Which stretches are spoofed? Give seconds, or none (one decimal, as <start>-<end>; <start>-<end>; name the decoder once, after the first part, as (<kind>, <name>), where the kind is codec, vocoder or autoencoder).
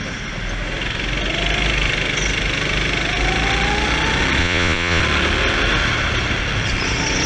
4.4-5.0 (vocoder, Vocos)